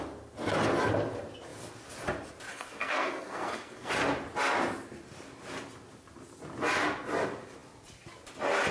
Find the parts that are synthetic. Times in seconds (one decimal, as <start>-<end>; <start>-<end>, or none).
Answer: 2.5-3.9